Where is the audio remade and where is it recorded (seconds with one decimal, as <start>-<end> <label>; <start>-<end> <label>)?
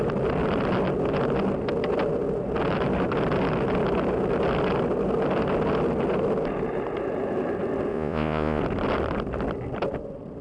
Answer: 0.0-7.9 recorded; 7.9-8.6 remade; 8.6-10.4 recorded